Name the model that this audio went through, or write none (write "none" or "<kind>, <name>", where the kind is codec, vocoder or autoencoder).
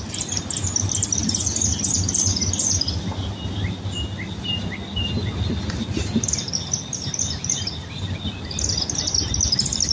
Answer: none